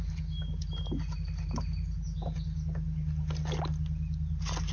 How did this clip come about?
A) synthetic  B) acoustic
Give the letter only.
B